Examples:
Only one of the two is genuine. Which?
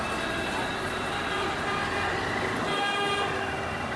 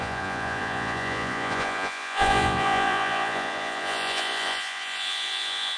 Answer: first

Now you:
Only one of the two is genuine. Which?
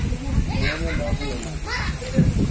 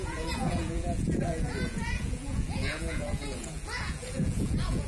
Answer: first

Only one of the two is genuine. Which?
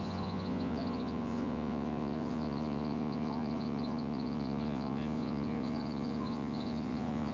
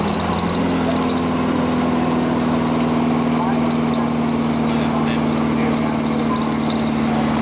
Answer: second